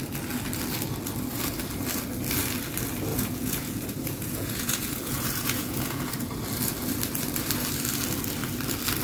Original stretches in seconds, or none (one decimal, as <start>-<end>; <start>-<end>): 0.0-3.1; 6.3-9.0